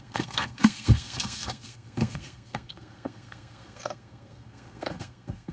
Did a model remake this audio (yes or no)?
yes